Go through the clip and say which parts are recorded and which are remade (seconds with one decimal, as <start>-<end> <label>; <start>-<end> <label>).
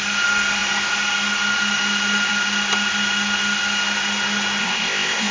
0.0-4.6 recorded; 4.6-5.3 remade